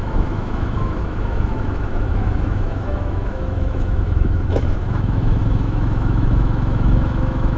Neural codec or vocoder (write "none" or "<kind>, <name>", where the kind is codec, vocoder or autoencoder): autoencoder, DAC-VAE